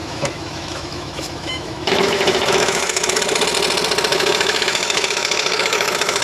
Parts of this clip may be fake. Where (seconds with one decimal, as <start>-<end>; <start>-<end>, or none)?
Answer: 0.0-3.2; 4.1-6.2